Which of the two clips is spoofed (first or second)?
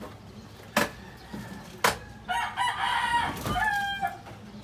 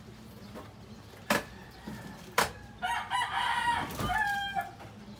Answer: second